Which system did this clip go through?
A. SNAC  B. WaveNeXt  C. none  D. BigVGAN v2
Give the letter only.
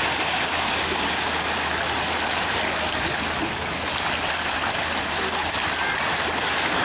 C